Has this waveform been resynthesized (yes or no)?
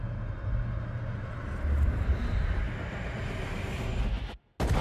no